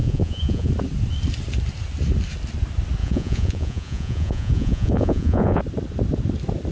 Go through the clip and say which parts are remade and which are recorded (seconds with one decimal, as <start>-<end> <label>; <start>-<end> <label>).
0.0-0.7 remade; 0.7-3.0 recorded; 3.0-5.6 remade; 5.6-6.7 recorded